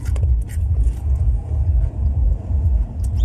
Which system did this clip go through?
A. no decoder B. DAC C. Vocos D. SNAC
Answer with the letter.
C